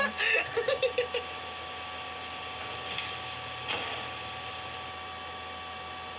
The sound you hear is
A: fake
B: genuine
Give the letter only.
B